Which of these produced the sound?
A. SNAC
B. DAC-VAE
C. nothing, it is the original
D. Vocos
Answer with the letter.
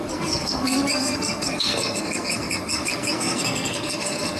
A